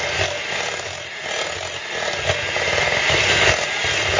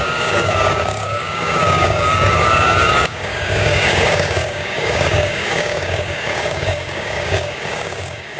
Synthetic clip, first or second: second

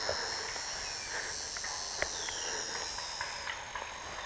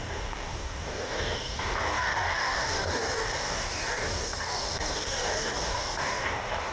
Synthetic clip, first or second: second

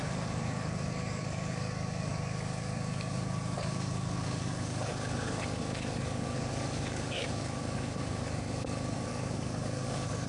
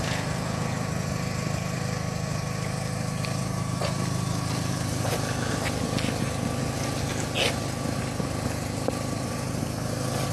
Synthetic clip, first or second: first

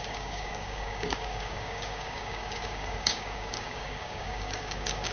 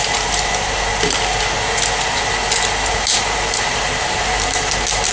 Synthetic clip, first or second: first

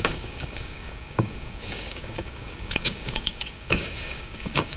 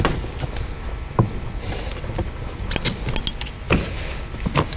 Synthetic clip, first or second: first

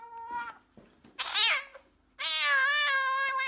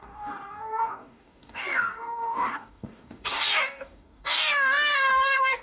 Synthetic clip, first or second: second